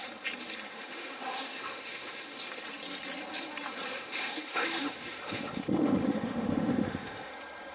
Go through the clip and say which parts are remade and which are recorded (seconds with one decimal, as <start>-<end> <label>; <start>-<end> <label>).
0.0-0.7 recorded; 0.7-2.5 remade; 2.5-3.9 recorded; 3.9-7.3 remade; 7.3-7.7 recorded